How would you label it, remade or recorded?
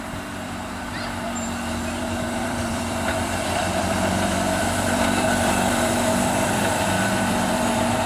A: remade